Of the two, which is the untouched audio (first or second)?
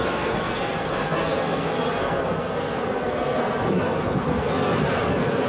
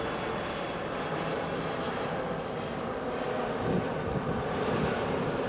second